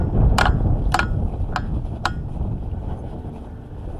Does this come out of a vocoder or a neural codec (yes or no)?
no